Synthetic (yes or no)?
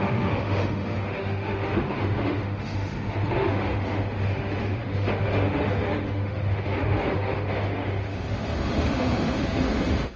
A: yes